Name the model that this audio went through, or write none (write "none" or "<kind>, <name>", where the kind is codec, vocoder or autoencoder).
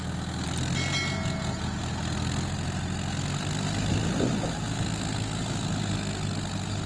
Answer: none